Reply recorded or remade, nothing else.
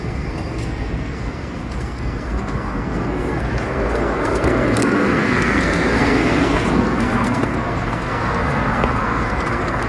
remade